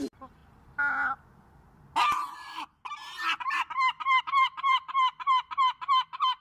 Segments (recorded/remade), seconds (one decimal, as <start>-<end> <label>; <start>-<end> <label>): 0.0-0.4 remade; 0.4-4.2 recorded; 4.2-6.4 remade